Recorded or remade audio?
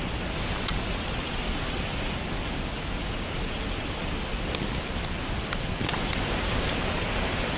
recorded